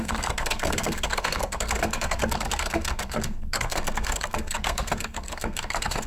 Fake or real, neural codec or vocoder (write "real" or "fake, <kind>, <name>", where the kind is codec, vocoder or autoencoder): fake, codec, SNAC